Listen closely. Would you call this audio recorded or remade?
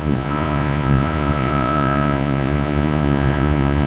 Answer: remade